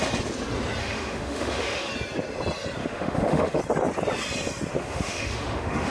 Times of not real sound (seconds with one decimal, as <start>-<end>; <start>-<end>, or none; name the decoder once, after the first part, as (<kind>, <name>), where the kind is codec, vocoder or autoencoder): 0.8-1.9 (autoencoder, DAC-VAE); 2.8-3.6; 4.8-5.9